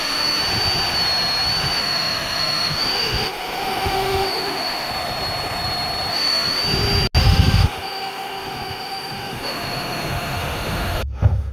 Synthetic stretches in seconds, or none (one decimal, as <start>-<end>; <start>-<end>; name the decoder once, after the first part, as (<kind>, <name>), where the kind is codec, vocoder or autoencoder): 0.0-0.4 (autoencoder, DAC-VAE); 1.8-4.9; 6.1-6.6; 7.2-11.5